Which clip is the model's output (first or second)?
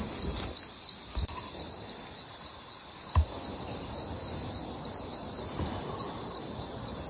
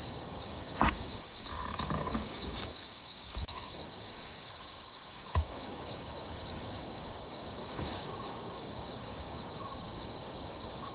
second